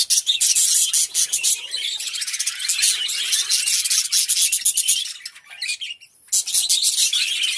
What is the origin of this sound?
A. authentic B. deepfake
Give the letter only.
A